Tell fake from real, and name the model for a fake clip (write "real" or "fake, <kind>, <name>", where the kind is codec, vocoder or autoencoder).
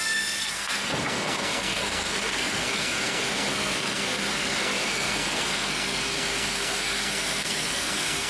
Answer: fake, codec, SNAC